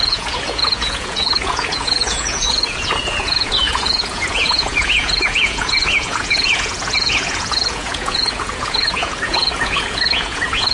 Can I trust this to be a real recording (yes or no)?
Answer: no